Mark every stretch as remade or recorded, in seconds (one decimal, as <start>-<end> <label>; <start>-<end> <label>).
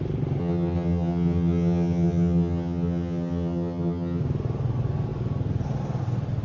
0.0-0.4 recorded; 0.4-4.2 remade; 4.2-6.4 recorded